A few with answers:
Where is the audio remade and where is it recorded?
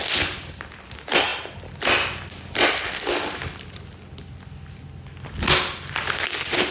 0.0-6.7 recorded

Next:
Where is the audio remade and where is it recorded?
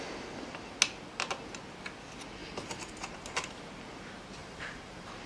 0.0-2.4 recorded; 2.4-3.5 remade; 3.5-4.4 recorded; 4.4-5.3 remade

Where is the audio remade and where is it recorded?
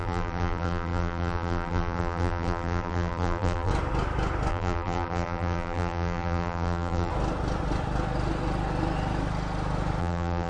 0.0-3.7 remade; 3.7-4.5 recorded; 4.5-7.1 remade; 7.1-10.0 recorded; 10.0-10.5 remade